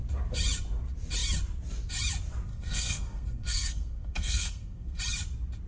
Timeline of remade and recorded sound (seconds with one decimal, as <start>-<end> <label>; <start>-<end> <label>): 0.0-2.5 recorded; 2.5-5.0 remade; 5.0-5.7 recorded